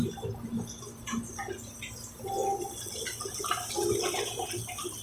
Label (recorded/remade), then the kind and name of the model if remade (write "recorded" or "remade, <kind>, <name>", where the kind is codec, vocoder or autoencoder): recorded